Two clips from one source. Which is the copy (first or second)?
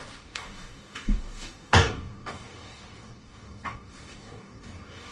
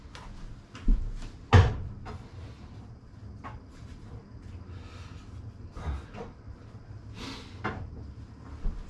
first